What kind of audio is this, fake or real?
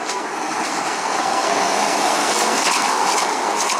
fake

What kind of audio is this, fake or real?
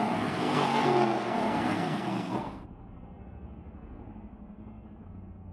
fake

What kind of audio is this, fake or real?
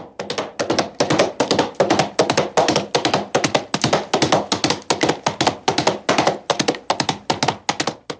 real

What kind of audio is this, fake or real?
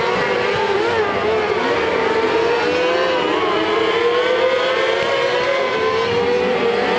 real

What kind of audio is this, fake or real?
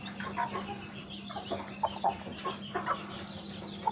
real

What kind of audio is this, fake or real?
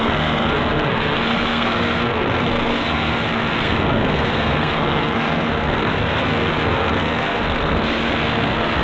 fake